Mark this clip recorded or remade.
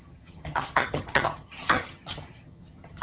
remade